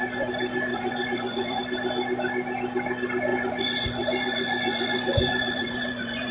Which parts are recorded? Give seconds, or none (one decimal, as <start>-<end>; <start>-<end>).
0.0-0.7; 1.6-3.3